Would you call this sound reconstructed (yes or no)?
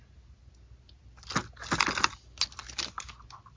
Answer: no